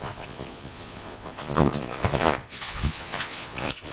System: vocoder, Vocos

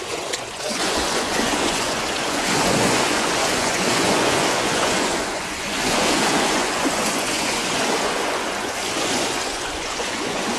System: vocoder, Vocos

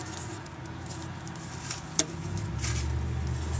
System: none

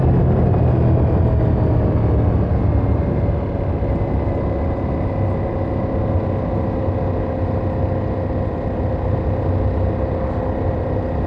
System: none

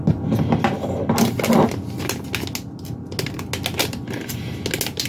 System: none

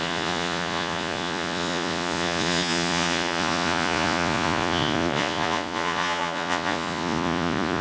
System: vocoder, Vocos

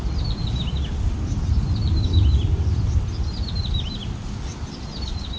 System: none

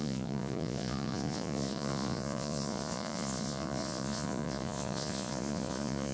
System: vocoder, Vocos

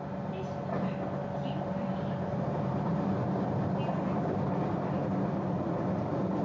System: none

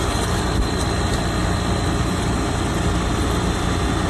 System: none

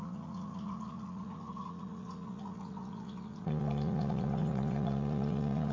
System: vocoder, Vocos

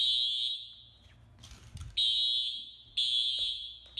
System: none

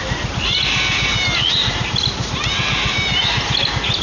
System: none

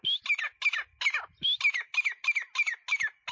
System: none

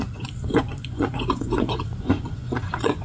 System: vocoder, Vocos